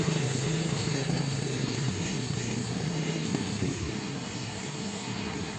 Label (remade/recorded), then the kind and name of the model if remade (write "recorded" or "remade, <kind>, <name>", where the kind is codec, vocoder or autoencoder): remade, codec, SNAC